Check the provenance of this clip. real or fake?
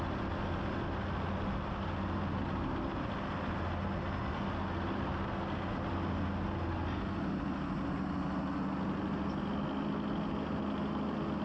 real